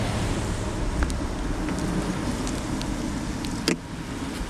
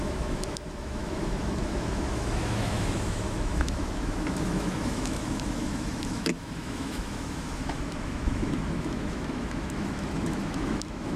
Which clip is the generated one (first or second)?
second